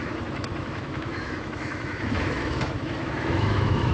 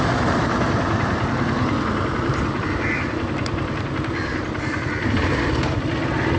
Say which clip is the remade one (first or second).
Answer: first